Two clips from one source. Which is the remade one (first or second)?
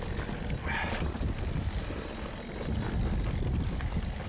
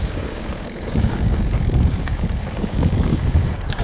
second